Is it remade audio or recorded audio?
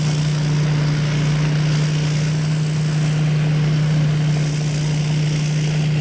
recorded